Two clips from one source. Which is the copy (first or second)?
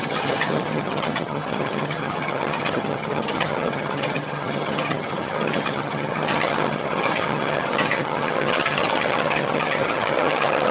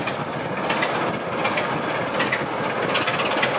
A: first